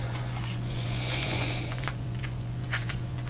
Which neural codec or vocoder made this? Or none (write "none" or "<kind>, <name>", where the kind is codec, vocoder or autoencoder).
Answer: vocoder, Vocos